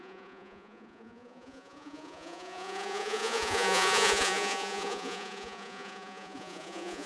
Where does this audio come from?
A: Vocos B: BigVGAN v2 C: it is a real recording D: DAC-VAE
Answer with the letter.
A